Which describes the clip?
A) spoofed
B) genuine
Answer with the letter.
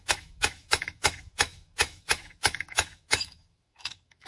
A